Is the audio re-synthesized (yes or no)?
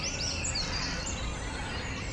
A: no